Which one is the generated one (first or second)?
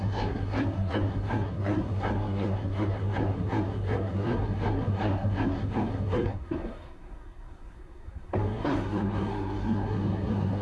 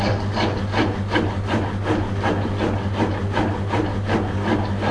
first